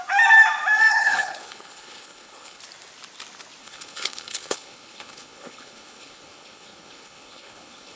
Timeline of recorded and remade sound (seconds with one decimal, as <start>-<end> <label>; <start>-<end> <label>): 0.0-0.9 recorded; 0.9-2.6 remade; 2.6-3.6 recorded; 3.6-8.0 remade